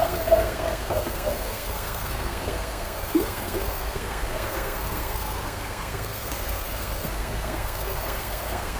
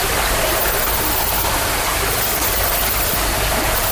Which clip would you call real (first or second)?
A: second